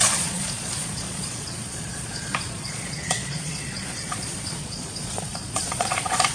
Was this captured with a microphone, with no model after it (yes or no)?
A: no